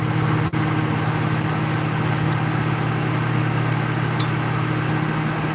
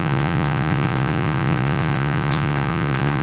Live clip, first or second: first